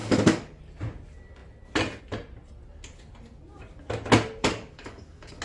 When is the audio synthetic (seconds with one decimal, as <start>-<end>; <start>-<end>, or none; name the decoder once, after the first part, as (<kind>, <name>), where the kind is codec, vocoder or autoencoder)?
0.0-0.6 (codec, DAC); 4.4-5.4